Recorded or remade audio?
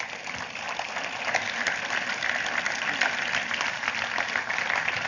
recorded